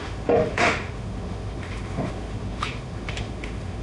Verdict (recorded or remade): remade